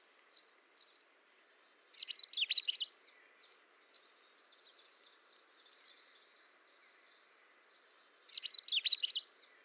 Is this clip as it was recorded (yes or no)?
yes